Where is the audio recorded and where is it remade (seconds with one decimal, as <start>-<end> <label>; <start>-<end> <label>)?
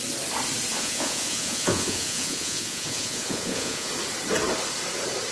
0.0-0.7 recorded; 0.7-3.9 remade; 3.9-5.3 recorded